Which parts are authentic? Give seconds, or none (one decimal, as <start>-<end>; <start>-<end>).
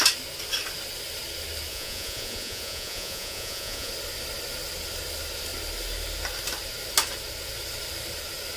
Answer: 0.0-1.7; 3.9-8.6